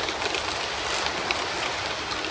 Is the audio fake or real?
real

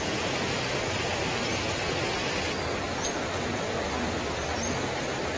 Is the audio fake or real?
real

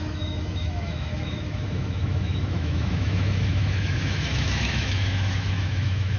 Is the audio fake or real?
fake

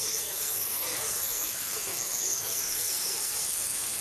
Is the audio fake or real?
fake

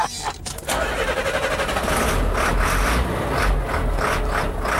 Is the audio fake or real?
real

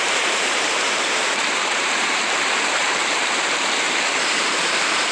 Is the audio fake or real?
fake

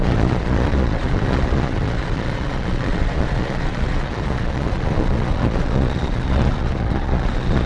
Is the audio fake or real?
fake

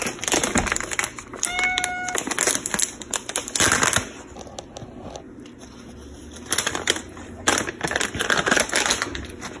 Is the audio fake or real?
real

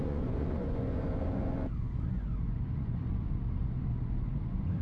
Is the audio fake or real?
fake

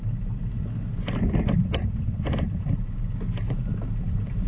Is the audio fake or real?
real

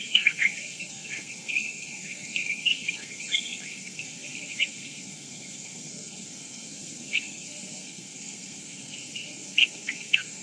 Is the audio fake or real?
fake